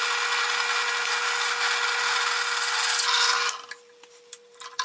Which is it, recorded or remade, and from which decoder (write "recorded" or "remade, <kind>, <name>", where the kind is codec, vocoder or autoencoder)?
recorded